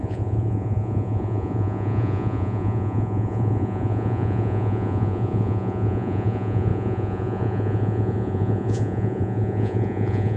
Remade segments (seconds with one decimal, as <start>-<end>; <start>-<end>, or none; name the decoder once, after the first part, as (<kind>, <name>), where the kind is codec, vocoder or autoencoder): 0.0-10.4 (vocoder, Vocos)